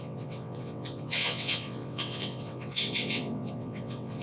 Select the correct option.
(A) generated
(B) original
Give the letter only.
A